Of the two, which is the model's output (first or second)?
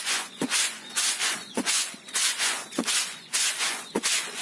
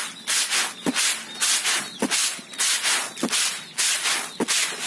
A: first